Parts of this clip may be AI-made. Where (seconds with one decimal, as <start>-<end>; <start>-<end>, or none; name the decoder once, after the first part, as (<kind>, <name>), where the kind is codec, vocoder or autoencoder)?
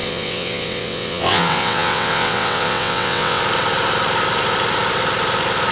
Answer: 0.0-3.4 (vocoder, WaveNeXt)